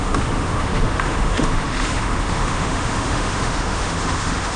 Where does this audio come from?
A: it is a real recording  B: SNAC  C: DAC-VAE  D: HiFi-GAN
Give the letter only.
C